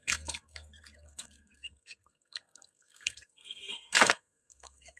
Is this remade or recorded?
remade